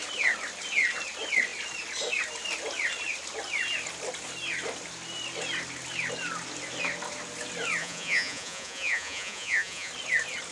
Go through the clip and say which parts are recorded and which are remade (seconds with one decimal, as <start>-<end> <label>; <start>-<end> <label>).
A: 0.0-7.8 recorded; 7.8-9.9 remade; 9.9-10.5 recorded

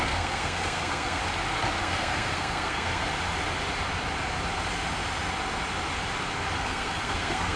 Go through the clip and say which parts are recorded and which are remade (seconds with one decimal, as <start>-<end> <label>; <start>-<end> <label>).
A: 0.0-1.2 remade; 1.2-1.8 recorded; 1.8-3.0 remade; 3.0-6.6 recorded; 6.6-7.6 remade

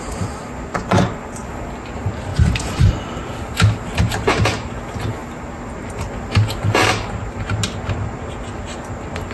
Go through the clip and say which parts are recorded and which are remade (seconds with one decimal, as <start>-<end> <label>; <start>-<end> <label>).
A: 0.0-0.4 recorded; 0.4-1.5 remade; 1.5-2.3 recorded; 2.3-2.9 remade; 2.9-9.3 recorded

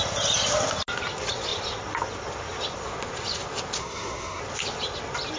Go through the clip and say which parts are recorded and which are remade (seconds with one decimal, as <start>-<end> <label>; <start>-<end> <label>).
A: 0.0-3.8 recorded; 3.8-4.4 remade; 4.4-5.4 recorded

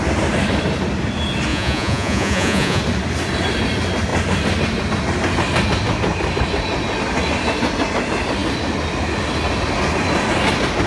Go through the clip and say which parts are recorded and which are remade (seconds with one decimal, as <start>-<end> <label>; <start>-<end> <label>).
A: 0.0-1.5 recorded; 1.5-2.8 remade; 2.8-10.9 recorded